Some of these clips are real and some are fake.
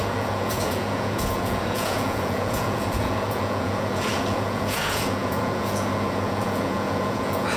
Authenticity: fake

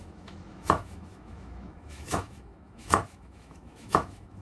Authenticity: fake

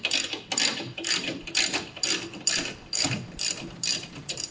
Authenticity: real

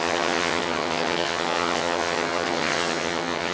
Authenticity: fake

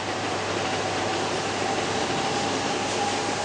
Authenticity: real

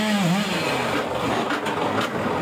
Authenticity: real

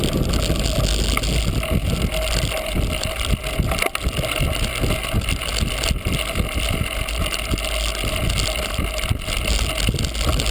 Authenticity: real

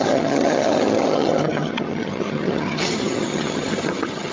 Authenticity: fake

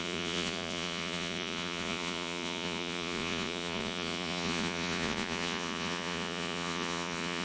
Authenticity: fake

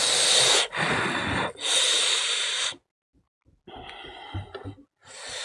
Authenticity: real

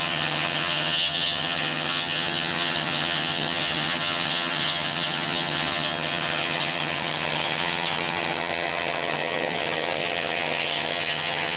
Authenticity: fake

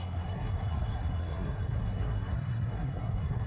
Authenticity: fake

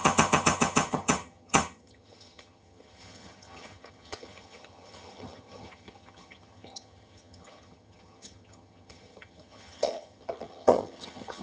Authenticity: fake